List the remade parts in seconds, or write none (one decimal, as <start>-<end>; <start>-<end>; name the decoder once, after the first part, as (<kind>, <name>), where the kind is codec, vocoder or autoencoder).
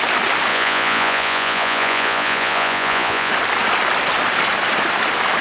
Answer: 0.5-3.3 (vocoder, Vocos)